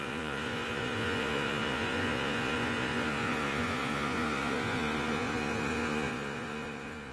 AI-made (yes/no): yes